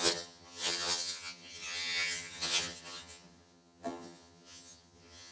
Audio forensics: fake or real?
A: fake